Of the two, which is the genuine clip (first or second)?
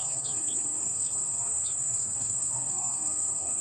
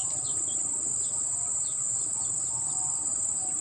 second